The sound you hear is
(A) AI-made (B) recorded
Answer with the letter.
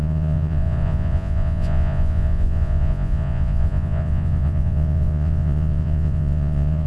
A